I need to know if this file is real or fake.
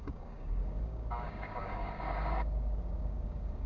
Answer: fake